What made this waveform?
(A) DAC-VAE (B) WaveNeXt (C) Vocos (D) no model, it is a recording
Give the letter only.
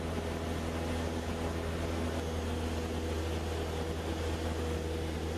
D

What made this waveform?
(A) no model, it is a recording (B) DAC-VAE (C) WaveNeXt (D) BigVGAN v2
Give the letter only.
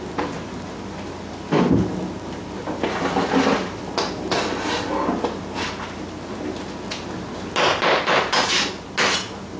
A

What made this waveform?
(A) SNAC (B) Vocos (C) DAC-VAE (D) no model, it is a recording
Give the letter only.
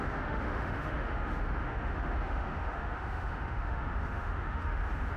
C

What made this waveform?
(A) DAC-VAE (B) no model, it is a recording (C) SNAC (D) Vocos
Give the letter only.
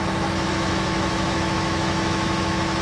A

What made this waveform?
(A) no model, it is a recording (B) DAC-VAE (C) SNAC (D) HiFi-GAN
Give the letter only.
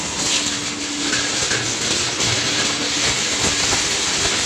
A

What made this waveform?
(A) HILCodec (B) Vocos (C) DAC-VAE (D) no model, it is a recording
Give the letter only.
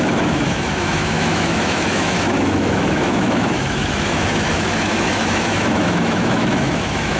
C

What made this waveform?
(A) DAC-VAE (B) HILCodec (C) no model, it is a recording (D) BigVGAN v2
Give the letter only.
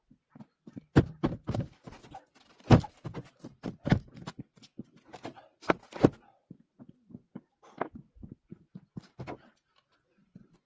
C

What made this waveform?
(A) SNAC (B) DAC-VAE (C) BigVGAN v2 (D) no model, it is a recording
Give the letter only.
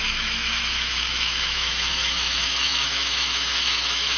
B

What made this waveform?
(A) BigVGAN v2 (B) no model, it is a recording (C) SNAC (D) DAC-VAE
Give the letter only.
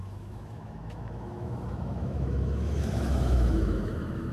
D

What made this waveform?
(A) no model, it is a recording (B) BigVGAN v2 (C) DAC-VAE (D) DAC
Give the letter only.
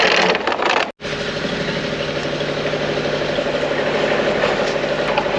A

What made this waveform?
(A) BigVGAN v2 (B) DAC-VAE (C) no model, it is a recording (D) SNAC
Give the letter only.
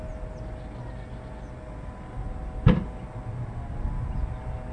C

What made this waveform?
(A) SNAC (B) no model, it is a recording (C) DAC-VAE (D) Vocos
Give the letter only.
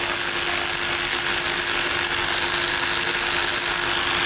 B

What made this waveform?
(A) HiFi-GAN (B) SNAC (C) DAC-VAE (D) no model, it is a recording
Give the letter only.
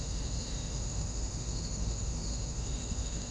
C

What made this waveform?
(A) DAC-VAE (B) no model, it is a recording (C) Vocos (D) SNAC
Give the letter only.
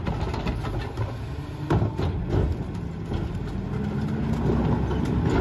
B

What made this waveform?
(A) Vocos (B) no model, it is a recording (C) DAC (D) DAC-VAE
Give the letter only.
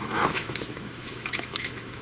D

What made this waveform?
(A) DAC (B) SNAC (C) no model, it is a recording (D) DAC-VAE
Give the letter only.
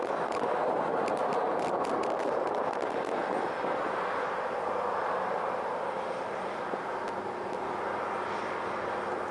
C